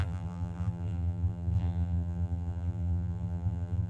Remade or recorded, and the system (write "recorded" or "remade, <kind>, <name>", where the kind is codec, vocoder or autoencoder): remade, vocoder, BigVGAN v2